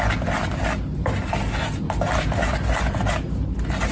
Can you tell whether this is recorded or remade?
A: recorded